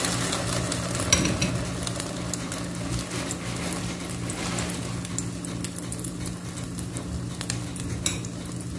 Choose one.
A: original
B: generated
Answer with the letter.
A